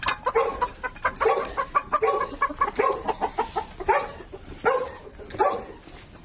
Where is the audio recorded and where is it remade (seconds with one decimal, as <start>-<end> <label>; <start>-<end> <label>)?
0.0-6.2 recorded